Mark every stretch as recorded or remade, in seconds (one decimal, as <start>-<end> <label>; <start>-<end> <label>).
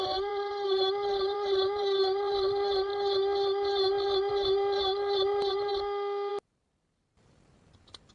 0.0-2.9 remade; 2.9-4.3 recorded; 4.3-5.7 remade; 5.7-6.3 recorded; 6.3-8.1 remade